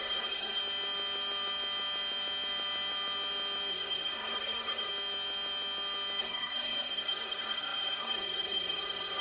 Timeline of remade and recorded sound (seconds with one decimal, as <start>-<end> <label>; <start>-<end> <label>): 0.0-0.6 remade; 0.6-3.7 recorded; 3.7-4.9 remade; 4.9-6.2 recorded; 6.2-9.2 remade